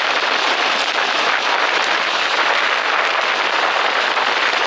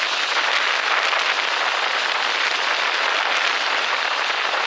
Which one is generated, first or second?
first